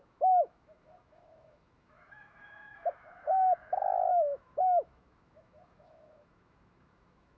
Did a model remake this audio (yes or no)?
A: yes